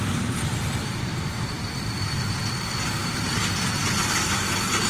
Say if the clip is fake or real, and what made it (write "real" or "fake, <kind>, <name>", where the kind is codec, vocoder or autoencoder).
real